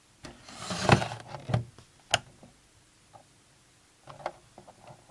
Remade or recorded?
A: recorded